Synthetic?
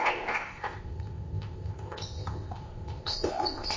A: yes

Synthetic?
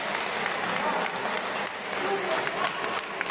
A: no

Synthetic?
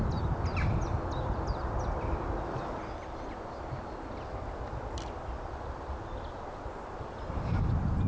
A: no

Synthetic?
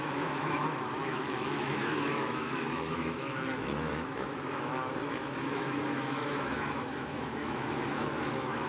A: yes